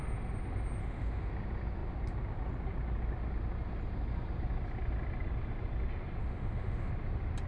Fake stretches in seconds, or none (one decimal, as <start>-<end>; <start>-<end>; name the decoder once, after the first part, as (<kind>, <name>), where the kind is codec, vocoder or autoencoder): 0.8-1.3 (autoencoder, DAC-VAE); 6.2-6.9